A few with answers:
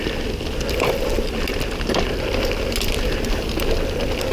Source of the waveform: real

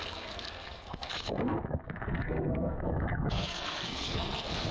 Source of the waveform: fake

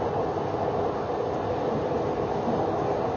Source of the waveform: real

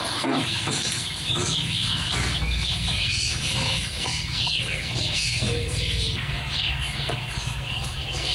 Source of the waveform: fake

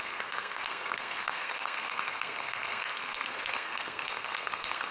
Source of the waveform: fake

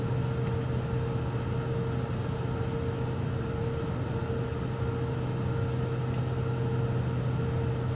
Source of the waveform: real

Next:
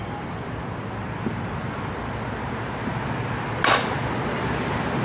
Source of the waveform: real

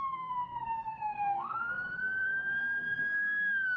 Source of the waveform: fake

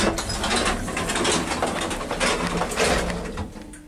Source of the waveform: real